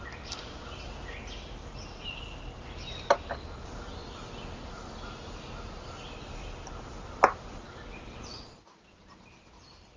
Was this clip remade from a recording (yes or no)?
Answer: no